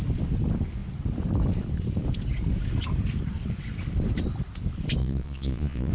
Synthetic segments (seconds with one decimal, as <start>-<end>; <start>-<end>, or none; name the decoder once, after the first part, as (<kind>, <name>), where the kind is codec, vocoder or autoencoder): 5.0-5.9 (vocoder, Vocos)